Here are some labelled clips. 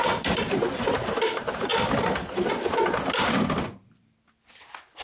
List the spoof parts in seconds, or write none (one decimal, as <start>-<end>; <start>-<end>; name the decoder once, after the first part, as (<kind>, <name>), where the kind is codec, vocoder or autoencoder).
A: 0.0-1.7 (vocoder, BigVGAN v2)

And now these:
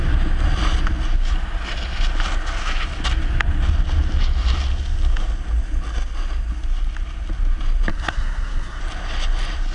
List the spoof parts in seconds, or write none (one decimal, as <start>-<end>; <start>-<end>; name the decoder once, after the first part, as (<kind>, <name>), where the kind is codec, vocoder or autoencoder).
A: 7.9-8.8 (codec, SNAC)

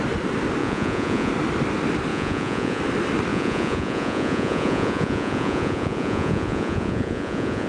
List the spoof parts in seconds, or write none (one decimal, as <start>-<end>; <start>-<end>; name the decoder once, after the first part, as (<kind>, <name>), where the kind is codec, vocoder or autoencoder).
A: 0.6-1.3 (vocoder, Vocos); 2.1-2.8; 3.3-7.7

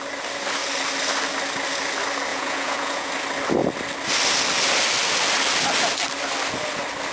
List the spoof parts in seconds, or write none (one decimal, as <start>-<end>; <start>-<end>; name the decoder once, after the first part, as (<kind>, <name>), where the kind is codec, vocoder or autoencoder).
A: 2.3-3.1 (vocoder, Vocos)

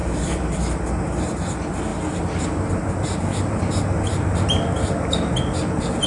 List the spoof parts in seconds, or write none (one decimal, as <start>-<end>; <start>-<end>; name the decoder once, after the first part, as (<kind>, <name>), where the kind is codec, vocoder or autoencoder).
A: 0.0-0.8 (vocoder, BigVGAN v2); 1.9-3.6

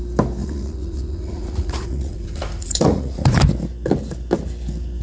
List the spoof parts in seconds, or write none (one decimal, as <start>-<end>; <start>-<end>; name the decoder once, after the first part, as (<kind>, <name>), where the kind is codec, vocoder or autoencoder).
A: 0.4-3.4 (vocoder, Vocos)